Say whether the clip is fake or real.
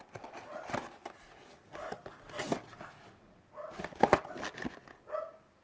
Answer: real